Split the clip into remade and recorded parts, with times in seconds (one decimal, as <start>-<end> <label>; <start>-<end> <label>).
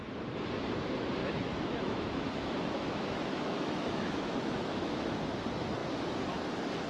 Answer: 0.0-1.2 recorded; 1.2-5.2 remade; 5.2-6.9 recorded